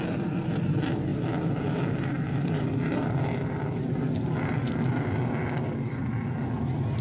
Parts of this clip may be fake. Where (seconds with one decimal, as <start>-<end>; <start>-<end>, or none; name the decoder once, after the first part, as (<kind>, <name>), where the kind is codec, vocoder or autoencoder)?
none

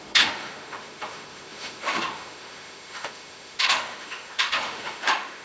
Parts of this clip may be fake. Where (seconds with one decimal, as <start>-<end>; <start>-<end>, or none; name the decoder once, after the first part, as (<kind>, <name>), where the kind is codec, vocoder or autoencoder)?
0.0-5.4 (autoencoder, DAC-VAE)

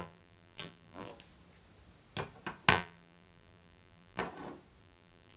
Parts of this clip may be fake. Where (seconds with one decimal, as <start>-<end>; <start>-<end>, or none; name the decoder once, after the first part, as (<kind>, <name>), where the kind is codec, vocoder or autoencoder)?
0.0-1.1 (vocoder, BigVGAN v2); 2.7-4.2; 4.8-5.4

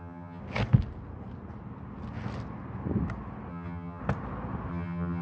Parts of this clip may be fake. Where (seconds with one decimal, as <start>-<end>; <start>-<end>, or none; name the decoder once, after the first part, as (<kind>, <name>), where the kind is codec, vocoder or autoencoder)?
0.0-0.4 (vocoder, HiFi-GAN); 3.5-4.0; 4.7-5.2

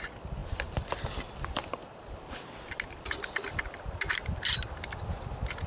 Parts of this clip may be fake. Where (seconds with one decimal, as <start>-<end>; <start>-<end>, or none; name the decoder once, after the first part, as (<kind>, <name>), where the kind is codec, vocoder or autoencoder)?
none

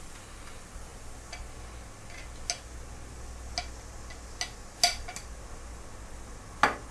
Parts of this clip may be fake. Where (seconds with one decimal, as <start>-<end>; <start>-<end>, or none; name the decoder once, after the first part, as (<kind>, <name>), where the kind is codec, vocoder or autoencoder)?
none